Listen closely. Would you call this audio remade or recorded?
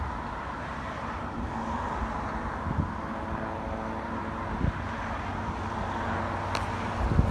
recorded